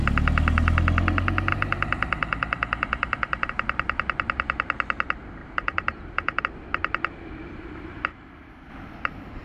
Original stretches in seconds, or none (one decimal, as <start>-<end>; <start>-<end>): 0.0-1.5; 3.5-5.4; 6.4-9.4